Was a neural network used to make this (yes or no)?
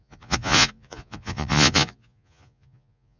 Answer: yes